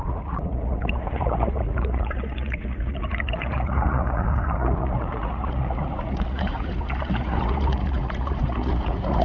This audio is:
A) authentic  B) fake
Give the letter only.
B